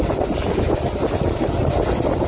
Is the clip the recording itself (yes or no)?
yes